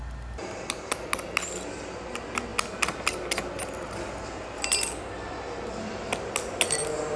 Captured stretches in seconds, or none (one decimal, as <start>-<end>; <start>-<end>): 0.0-7.2